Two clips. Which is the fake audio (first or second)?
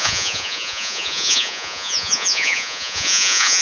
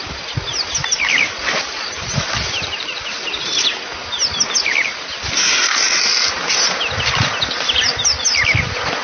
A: first